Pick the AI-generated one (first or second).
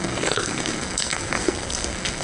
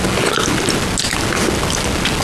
first